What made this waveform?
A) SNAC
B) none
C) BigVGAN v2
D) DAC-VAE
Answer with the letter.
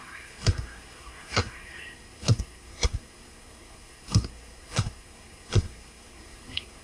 A